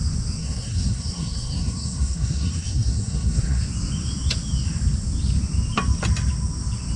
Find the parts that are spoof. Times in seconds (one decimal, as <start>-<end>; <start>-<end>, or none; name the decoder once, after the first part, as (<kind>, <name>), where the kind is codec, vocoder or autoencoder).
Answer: 0.4-3.6 (codec, SNAC)